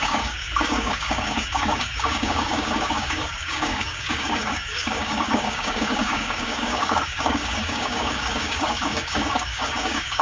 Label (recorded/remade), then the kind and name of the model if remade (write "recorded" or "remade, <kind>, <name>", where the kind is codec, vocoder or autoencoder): remade, codec, DAC